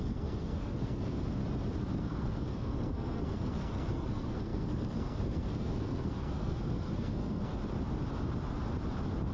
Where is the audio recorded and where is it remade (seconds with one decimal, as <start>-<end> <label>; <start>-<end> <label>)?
0.0-1.4 remade; 1.4-2.0 recorded; 2.0-7.6 remade; 7.6-9.3 recorded